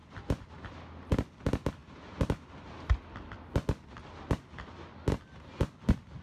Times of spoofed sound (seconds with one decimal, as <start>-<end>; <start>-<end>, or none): none